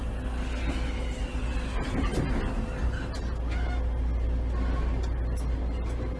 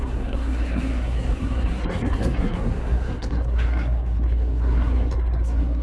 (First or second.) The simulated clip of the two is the second